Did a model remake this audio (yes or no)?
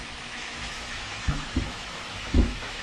yes